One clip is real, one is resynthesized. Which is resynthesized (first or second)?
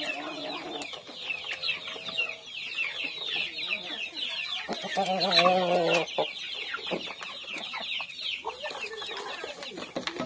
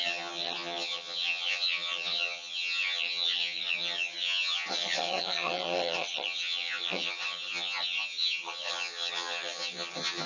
second